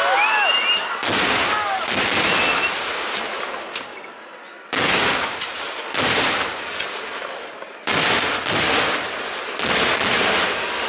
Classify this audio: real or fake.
real